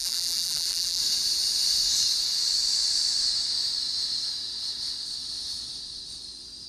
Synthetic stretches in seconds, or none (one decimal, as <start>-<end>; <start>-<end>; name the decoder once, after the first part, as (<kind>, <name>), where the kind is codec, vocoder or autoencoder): 0.0-1.0 (vocoder, BigVGAN v2)